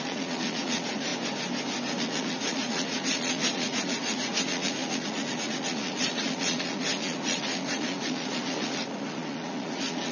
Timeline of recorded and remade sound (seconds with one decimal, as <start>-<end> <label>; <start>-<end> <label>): 0.0-1.1 remade; 1.1-2.0 recorded; 2.0-10.1 remade